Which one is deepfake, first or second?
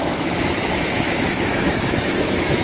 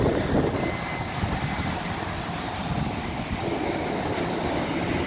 first